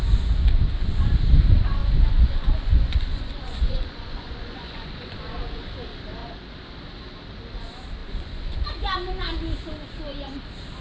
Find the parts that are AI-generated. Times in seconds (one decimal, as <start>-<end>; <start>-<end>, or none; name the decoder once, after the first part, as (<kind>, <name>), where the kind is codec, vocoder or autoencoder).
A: 1.8-5.8 (vocoder, Vocos); 8.0-8.6